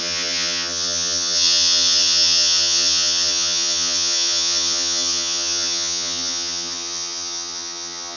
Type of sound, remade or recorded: remade